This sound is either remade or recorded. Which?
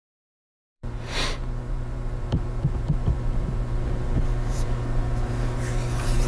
remade